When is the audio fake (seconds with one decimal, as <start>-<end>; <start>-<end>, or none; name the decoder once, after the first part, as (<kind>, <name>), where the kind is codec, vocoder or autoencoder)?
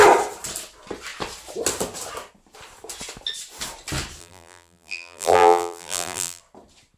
4.2-6.4 (vocoder, BigVGAN v2)